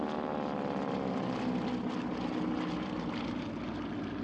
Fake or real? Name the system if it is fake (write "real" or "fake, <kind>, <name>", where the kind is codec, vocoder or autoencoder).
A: real